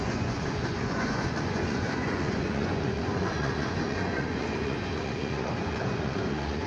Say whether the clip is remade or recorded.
remade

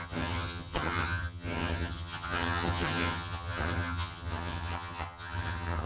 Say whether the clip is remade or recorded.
remade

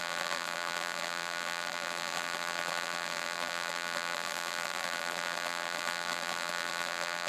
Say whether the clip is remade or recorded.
remade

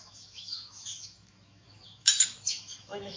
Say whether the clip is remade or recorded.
remade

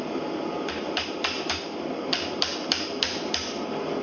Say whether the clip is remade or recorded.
remade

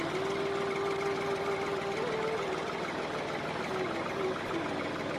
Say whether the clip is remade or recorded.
recorded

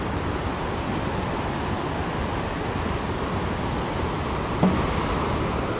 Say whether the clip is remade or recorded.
recorded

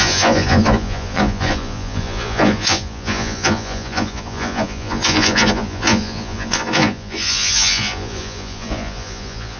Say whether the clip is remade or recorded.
remade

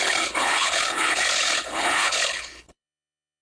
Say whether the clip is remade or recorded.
remade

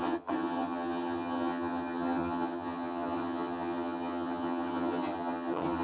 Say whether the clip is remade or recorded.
remade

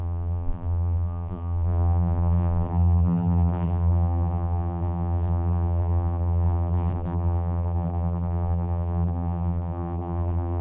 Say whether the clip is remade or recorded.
remade